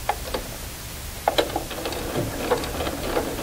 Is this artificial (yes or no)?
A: no